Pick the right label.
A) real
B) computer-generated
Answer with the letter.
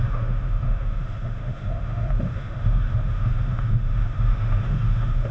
B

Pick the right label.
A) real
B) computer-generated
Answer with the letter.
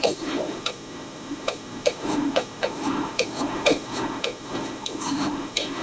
B